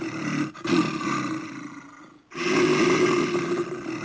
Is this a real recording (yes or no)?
yes